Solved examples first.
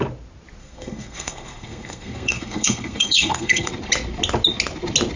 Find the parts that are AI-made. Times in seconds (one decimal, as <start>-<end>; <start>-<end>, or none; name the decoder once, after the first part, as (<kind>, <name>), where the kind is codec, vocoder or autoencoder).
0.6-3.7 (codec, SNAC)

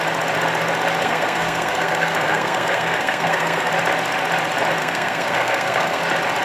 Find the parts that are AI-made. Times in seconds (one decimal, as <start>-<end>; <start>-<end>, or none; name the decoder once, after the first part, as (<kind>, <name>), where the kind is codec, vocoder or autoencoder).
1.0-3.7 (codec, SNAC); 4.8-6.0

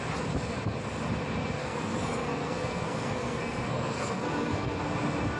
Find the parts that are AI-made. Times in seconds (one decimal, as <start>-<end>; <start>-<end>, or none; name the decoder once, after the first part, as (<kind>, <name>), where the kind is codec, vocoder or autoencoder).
1.6-4.8 (codec, SNAC)

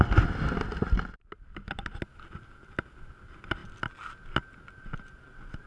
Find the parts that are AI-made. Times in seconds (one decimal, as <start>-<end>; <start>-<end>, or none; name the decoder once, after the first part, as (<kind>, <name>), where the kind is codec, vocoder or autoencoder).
none